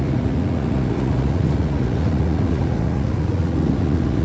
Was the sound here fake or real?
fake